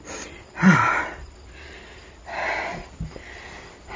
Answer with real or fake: real